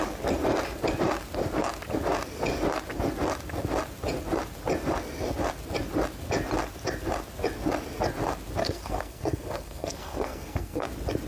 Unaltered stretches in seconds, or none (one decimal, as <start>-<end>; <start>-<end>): 0.0-8.6; 10.9-11.3